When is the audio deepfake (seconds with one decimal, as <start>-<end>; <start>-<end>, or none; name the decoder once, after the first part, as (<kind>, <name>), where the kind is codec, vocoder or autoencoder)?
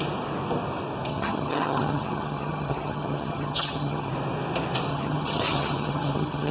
1.1-4.1 (vocoder, HiFi-GAN); 4.9-6.5